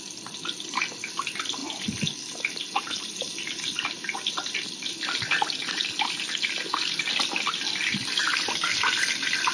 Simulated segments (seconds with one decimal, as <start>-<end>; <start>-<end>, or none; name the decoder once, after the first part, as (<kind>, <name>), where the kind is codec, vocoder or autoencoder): none